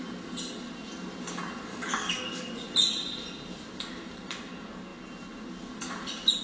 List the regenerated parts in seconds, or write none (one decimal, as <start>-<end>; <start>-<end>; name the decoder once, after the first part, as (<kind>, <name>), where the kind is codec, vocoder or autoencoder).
1.7-2.5 (codec, DAC)